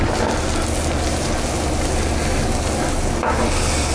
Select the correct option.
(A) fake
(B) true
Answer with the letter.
B